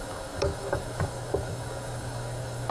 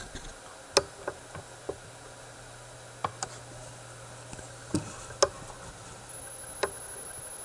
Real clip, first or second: second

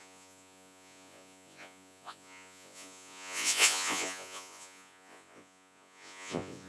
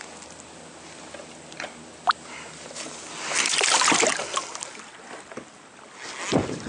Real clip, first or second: second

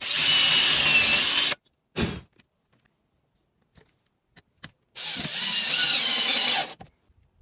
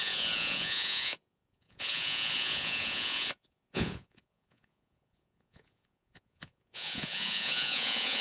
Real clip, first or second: first